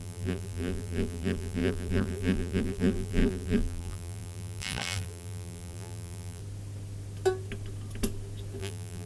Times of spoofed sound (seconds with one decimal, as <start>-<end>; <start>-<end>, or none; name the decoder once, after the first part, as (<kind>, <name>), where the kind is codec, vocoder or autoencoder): 0.0-6.4 (vocoder, BigVGAN v2); 8.6-9.1